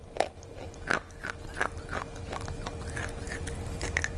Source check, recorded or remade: recorded